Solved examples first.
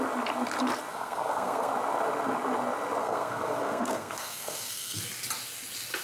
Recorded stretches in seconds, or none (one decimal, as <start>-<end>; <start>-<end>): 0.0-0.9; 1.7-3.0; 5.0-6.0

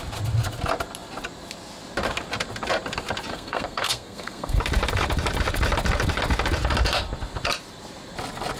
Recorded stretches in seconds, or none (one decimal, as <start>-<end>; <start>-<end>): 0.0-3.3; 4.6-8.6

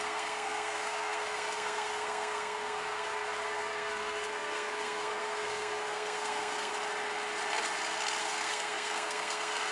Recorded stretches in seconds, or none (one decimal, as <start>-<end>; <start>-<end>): 6.7-8.2